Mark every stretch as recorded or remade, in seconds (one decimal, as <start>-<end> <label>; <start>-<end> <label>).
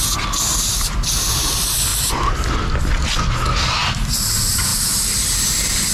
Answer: 0.0-3.8 recorded; 3.8-4.3 remade; 4.3-5.9 recorded